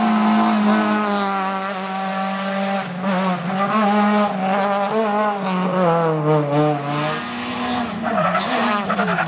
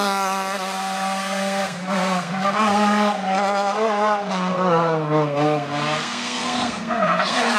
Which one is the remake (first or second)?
second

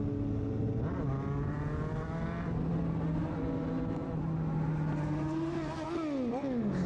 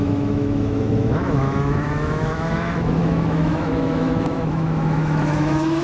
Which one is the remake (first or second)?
second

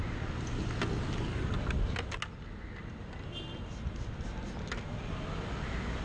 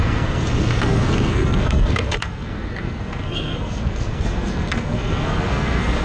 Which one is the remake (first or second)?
second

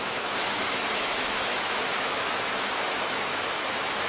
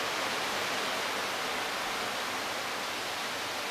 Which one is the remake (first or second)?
first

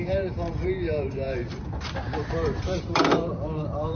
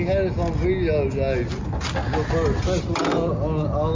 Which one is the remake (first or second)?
first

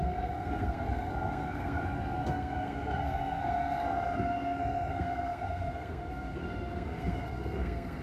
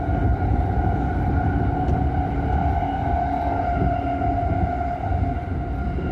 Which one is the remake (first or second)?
first